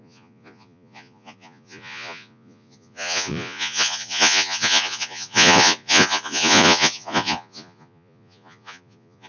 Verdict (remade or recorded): remade